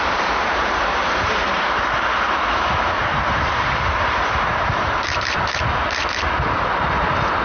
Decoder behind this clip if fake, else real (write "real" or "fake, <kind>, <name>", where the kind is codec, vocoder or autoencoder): fake, vocoder, BigVGAN v2